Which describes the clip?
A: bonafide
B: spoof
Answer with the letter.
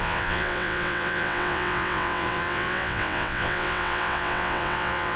B